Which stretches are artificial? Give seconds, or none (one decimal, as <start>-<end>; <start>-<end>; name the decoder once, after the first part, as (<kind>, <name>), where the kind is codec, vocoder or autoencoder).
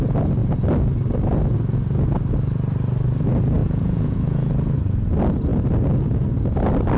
3.6-4.5 (vocoder, Vocos)